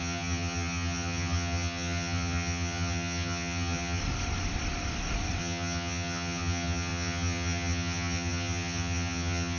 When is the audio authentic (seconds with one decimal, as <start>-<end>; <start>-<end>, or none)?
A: 4.0-5.4